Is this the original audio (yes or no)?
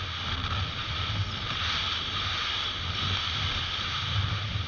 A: yes